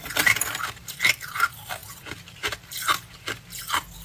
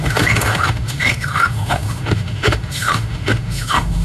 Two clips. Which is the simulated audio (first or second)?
second